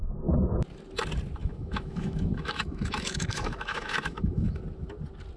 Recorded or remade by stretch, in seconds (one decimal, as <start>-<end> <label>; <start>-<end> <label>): 0.0-1.4 recorded; 1.4-4.6 remade; 4.6-5.4 recorded